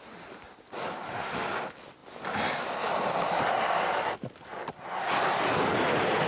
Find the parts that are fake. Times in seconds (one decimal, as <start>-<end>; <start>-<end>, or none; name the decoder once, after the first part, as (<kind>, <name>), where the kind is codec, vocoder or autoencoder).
none